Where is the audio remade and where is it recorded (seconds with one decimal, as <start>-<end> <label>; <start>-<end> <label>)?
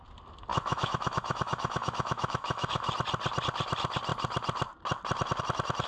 0.0-0.5 recorded; 0.5-2.9 remade; 2.9-5.9 recorded